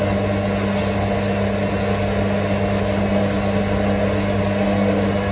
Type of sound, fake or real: real